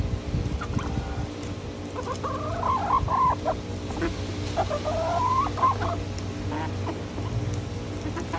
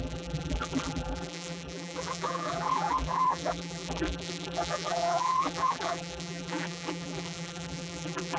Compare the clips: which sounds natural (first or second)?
first